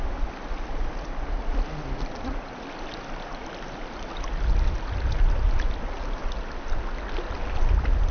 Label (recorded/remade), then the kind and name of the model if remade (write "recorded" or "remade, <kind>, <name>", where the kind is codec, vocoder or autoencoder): recorded